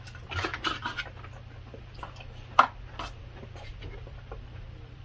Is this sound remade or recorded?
remade